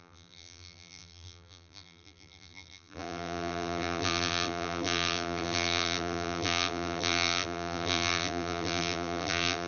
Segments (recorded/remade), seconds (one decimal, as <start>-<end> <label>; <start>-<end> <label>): 0.0-9.7 remade